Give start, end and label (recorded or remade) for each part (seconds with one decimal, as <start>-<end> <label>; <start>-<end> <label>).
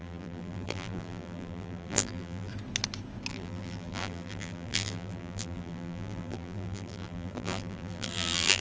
0.0-2.5 remade; 2.5-3.3 recorded; 3.3-8.6 remade